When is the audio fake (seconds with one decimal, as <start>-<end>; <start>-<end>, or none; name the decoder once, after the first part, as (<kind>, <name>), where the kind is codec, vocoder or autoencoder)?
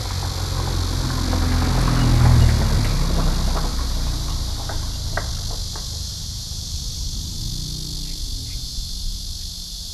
3.7-5.3 (vocoder, BigVGAN v2); 6.1-7.4; 9.0-9.9